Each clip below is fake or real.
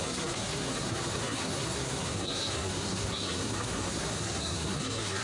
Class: fake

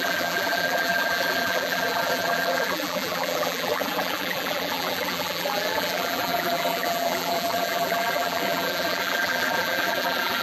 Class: fake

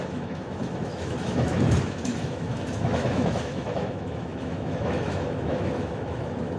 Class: fake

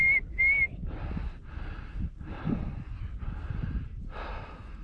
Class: real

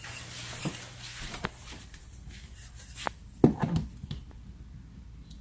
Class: real